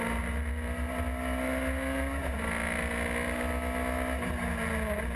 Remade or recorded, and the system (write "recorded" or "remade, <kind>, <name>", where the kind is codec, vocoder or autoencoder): recorded